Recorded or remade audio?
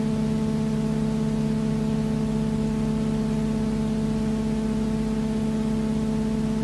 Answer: recorded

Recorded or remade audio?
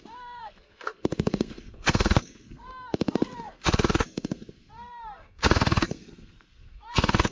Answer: remade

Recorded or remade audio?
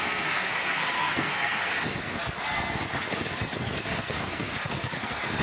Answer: remade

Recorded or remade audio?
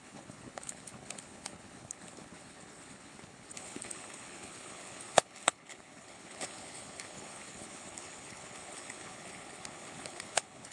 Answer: remade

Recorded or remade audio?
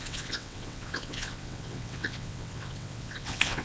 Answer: remade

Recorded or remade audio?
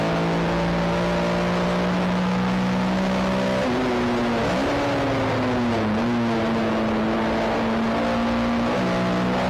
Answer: recorded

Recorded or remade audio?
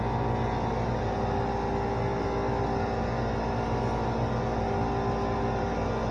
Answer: recorded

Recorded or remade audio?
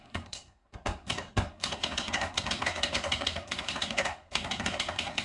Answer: remade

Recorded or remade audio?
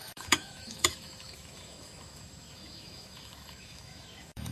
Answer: remade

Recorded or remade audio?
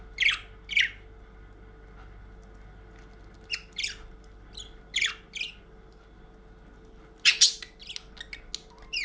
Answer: recorded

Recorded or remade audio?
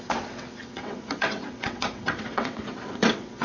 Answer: remade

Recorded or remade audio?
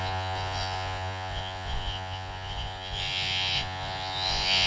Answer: remade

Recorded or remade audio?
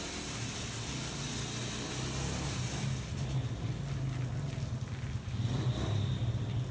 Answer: recorded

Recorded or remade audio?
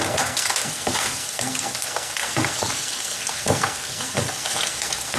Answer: remade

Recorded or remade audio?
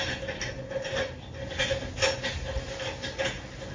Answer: recorded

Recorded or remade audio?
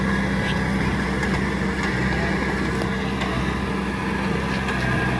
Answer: recorded